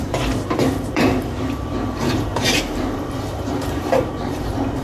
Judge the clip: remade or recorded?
remade